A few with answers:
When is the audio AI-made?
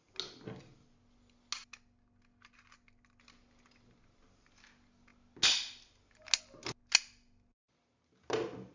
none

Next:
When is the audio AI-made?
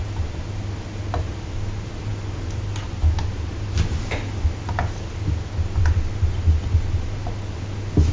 none